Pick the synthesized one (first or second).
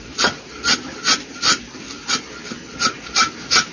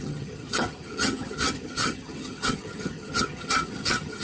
second